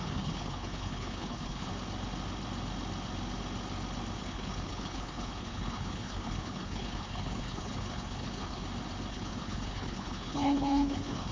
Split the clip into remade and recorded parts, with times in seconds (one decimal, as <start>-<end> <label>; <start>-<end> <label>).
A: 0.0-1.7 remade; 1.7-4.2 recorded; 4.2-8.6 remade; 8.6-9.1 recorded; 9.1-11.3 remade